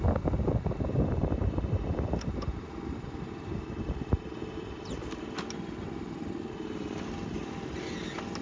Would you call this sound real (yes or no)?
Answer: yes